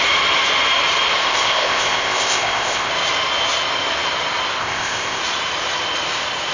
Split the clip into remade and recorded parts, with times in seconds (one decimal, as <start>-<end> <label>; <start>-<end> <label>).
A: 0.0-1.2 recorded; 1.2-2.9 remade; 2.9-4.6 recorded; 4.6-5.2 remade; 5.2-6.5 recorded